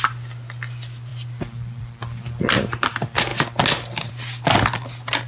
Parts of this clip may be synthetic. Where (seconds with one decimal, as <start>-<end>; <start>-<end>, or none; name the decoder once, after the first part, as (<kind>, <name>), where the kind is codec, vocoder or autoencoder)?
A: none